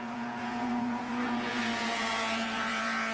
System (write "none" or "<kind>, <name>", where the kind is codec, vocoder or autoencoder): vocoder, Vocos